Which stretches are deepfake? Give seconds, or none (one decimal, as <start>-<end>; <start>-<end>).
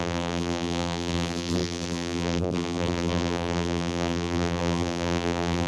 0.0-5.7